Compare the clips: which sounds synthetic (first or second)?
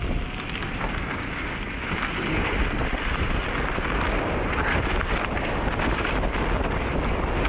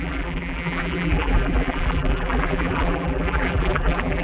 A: second